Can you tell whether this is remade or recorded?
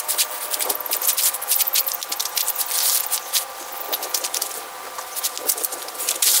recorded